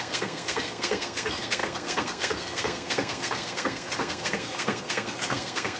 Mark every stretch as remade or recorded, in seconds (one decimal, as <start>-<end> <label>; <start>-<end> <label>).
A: 0.0-5.8 remade